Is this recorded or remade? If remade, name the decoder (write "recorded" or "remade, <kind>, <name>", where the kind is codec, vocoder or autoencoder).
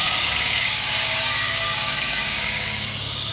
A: remade, codec, DAC